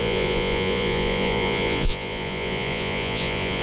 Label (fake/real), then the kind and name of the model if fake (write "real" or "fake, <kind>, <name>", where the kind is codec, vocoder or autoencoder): fake, vocoder, Vocos